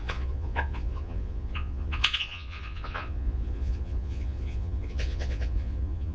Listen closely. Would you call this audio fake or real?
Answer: fake